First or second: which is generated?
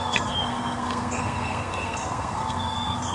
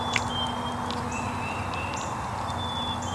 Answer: first